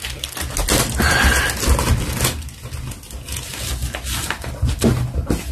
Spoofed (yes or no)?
no